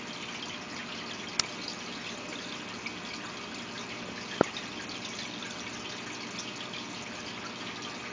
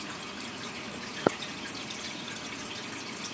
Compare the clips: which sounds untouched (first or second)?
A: first